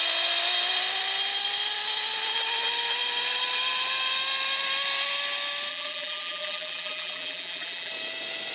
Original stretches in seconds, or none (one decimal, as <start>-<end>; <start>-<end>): 0.0-5.7; 7.9-8.5